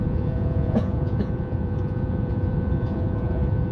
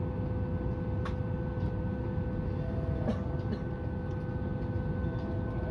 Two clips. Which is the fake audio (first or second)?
first